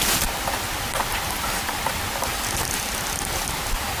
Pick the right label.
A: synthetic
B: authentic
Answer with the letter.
B